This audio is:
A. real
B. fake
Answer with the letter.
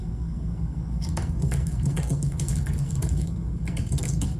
B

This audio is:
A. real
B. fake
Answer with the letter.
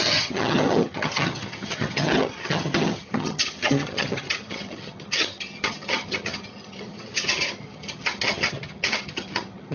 B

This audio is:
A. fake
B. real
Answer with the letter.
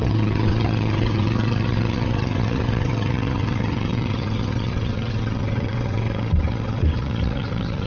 A